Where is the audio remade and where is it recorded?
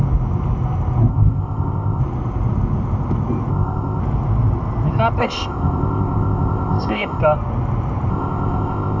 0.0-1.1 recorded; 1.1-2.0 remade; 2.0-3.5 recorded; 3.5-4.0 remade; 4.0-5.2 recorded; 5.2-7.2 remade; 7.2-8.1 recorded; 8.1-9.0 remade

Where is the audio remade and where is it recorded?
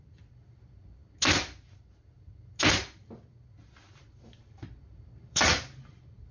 0.0-4.0 recorded; 4.0-6.3 remade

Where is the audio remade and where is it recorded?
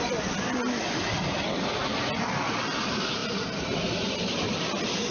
0.0-5.1 recorded